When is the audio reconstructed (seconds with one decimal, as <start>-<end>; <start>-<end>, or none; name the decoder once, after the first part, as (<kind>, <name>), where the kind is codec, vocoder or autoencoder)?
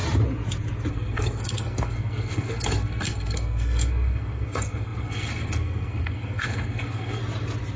0.9-7.2 (codec, SNAC)